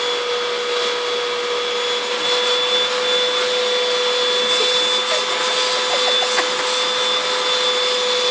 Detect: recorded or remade recorded